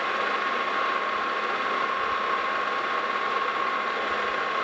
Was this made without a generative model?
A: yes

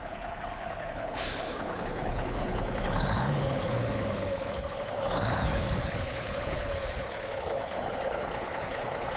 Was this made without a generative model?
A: no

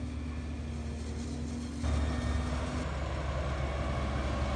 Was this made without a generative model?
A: yes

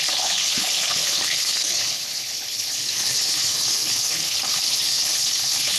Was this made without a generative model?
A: no